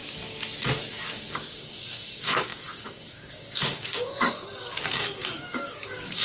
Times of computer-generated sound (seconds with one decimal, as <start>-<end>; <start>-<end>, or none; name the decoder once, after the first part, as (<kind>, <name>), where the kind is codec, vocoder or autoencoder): 1.1-6.2 (codec, DAC)